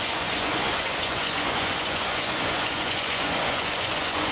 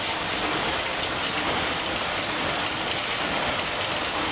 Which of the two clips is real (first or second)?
second